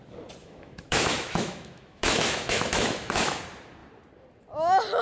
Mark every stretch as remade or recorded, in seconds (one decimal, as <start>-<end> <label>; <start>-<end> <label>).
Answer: 0.0-0.4 recorded; 0.4-3.4 remade; 3.4-5.0 recorded